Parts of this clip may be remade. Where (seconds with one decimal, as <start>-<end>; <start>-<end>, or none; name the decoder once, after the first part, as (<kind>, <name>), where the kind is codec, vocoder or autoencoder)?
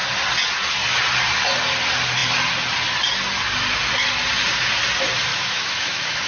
5.3-6.3 (autoencoder, DAC-VAE)